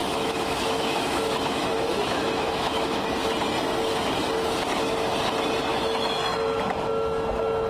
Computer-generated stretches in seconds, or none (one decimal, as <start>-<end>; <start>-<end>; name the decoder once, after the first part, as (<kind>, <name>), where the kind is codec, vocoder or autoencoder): 0.0-3.0 (autoencoder, DAC-VAE); 5.7-6.2